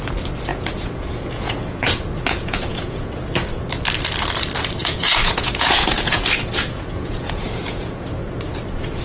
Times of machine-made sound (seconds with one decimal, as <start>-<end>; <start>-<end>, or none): 0.5-3.2; 4.8-8.2